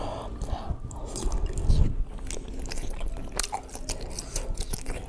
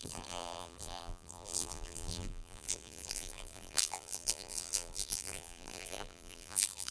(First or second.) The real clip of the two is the first